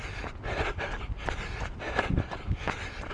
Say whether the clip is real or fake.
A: real